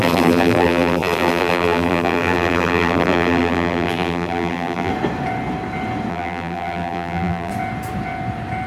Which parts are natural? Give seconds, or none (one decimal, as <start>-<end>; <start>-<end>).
4.9-6.1; 7.5-8.7